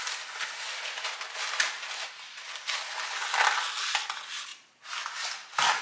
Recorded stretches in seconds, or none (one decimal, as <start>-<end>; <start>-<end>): 0.0-5.8